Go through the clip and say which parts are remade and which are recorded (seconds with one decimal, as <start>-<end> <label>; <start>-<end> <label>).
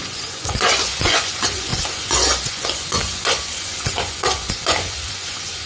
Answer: 0.0-5.7 remade